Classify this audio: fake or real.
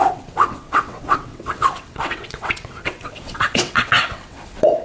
fake